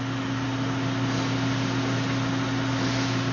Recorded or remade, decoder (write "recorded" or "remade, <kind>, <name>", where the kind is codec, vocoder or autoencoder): recorded